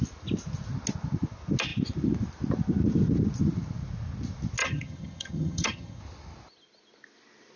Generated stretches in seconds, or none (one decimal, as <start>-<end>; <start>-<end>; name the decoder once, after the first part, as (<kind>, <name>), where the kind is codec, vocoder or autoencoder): 4.6-6.0 (vocoder, HiFi-GAN)